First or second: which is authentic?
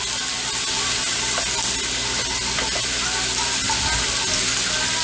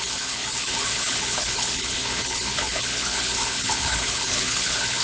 first